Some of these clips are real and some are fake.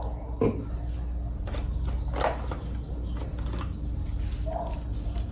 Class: real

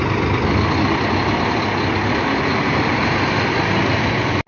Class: real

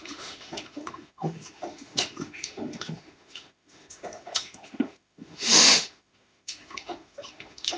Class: fake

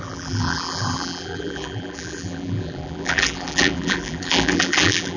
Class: fake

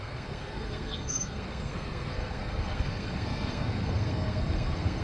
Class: fake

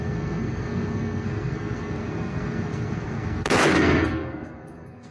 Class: fake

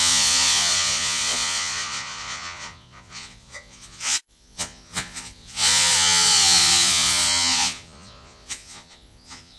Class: fake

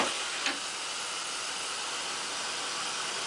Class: real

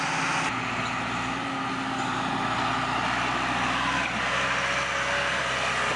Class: real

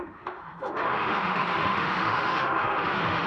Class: fake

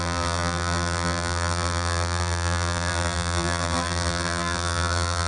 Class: fake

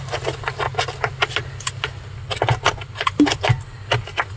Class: real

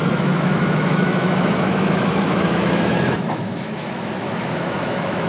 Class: fake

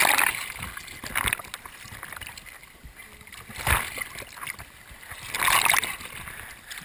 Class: real